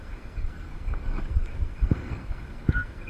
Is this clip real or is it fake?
fake